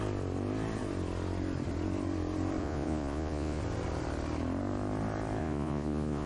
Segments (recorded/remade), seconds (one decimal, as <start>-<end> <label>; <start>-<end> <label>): 0.0-2.6 recorded; 2.6-3.6 remade; 3.6-5.4 recorded; 5.4-6.3 remade